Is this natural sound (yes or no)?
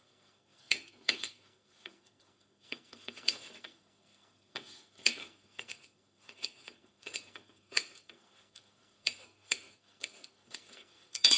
no